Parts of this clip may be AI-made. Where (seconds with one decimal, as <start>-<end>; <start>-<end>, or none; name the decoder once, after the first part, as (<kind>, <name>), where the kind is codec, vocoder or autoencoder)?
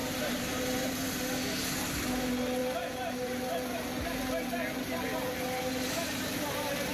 0.0-1.1 (vocoder, BigVGAN v2); 2.6-5.7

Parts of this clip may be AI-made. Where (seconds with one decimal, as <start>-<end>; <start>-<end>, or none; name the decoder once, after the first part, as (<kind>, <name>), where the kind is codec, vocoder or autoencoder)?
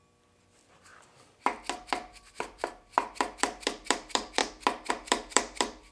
0.0-0.9 (vocoder, BigVGAN v2); 2.3-4.4; 4.9-5.9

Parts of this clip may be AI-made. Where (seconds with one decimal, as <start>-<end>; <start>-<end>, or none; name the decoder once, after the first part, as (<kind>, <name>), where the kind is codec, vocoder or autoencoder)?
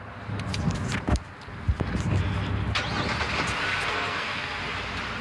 3.7-4.6 (codec, SNAC)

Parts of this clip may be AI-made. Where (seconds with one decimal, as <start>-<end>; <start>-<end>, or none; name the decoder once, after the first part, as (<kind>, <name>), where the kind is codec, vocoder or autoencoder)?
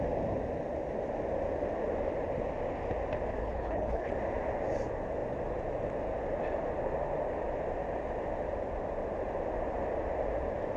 3.4-4.1 (codec, HILCodec)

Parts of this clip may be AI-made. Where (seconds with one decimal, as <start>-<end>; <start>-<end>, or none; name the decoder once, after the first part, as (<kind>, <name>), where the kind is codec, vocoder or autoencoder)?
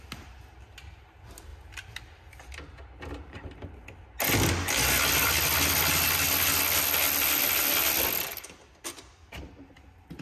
none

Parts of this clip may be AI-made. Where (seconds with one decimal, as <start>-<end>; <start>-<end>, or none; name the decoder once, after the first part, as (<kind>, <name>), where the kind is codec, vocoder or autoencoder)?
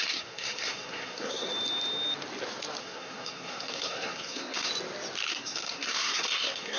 0.0-1.5 (codec, SNAC); 2.8-4.7; 5.3-6.8